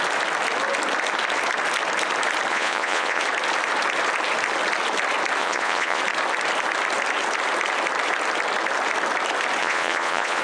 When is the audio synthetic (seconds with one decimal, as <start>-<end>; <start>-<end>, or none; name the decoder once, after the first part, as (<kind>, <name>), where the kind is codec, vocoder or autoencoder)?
2.5-3.2 (vocoder, Vocos); 5.4-6.0; 9.6-10.4